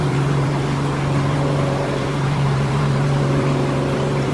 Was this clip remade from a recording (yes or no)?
yes